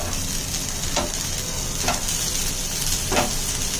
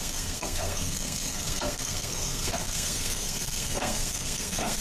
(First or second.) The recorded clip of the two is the first